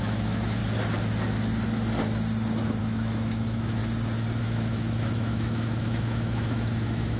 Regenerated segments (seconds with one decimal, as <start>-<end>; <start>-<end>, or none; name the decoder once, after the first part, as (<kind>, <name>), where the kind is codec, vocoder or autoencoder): 0.0-0.6 (autoencoder, DAC-VAE); 2.8-3.8; 4.4-7.2